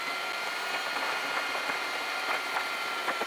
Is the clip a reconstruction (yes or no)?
no